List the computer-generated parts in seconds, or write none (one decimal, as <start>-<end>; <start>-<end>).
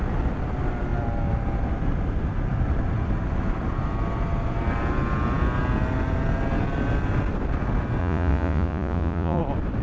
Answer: 8.0-9.4